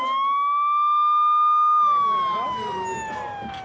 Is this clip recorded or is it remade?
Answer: recorded